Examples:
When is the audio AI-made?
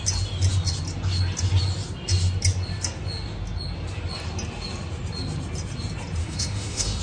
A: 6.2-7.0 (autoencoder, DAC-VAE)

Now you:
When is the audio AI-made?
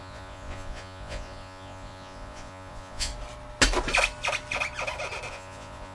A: 0.0-3.1 (vocoder, Vocos); 5.3-5.9